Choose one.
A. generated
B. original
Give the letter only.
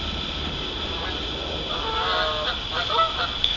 B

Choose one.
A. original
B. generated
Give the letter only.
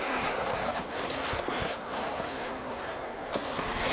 B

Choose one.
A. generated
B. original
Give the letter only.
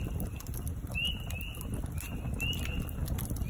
B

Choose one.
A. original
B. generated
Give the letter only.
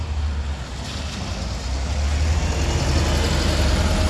A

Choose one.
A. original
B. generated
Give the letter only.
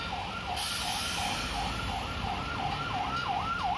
A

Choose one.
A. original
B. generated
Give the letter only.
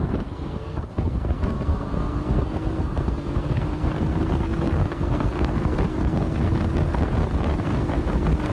B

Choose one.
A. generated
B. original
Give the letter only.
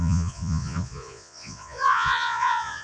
A